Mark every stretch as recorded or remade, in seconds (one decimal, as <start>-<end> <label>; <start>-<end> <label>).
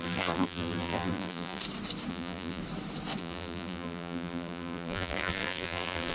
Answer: 0.0-1.6 remade; 1.6-2.1 recorded; 2.1-2.6 remade; 2.6-3.2 recorded; 3.2-6.1 remade